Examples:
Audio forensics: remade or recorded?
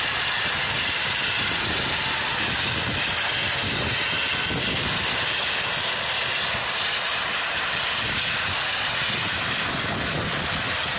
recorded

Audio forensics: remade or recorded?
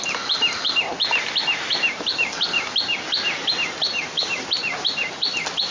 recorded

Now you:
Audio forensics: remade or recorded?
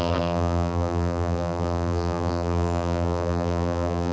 remade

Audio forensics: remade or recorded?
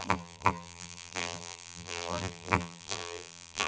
remade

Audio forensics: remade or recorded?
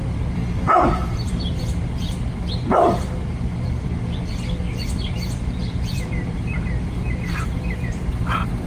remade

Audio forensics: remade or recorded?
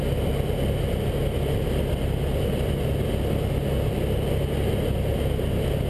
recorded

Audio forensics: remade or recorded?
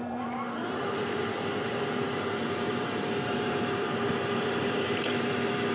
remade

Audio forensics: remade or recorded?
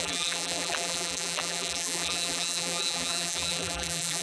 remade